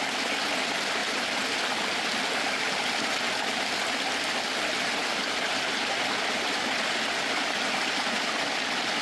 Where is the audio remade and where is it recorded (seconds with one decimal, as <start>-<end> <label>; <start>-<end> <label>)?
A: 0.0-9.0 recorded